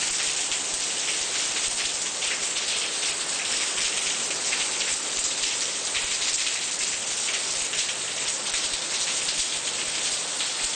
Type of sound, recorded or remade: recorded